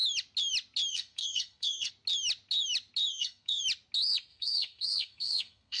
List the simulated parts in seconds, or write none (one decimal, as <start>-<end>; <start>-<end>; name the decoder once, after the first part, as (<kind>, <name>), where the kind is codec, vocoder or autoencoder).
0.9-1.9 (codec, SNAC); 3.1-3.6; 4.3-5.8